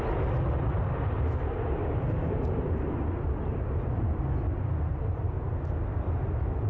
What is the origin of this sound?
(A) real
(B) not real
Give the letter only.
A